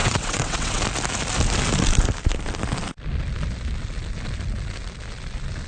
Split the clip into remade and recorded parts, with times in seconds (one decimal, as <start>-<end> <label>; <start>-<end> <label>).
0.0-0.8 remade; 0.8-5.7 recorded